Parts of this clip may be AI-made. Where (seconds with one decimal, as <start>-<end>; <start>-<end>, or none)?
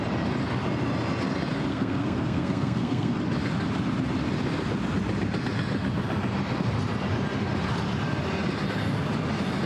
1.7-3.2